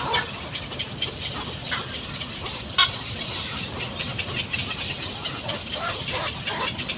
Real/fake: real